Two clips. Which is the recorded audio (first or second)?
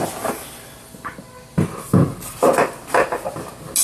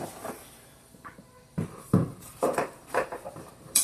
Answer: first